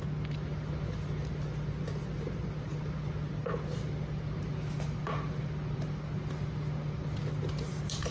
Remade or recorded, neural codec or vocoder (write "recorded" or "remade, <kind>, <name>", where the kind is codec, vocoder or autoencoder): recorded